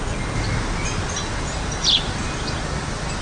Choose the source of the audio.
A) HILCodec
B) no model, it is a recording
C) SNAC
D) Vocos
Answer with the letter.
B